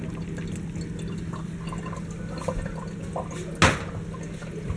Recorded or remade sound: recorded